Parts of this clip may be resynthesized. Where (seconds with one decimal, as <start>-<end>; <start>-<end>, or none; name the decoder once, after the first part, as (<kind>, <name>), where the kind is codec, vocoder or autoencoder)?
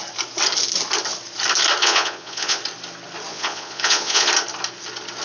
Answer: 1.8-2.6 (vocoder, Vocos); 3.3-4.3